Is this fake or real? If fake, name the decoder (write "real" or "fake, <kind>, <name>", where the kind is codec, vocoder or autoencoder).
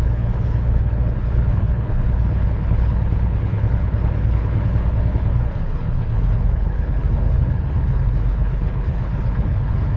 fake, codec, HILCodec